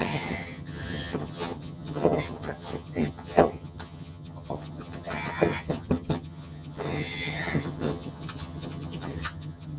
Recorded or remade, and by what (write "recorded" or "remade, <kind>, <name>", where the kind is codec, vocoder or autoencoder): remade, vocoder, HiFi-GAN